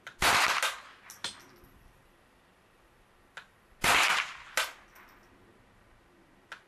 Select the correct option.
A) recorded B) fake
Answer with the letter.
A